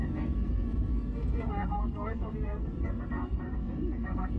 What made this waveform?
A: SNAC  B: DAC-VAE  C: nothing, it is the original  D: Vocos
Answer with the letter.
A